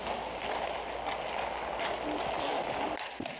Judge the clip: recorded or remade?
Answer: recorded